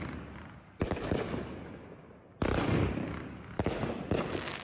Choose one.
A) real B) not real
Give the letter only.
A